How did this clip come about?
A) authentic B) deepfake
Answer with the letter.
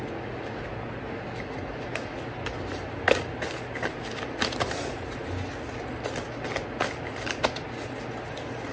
A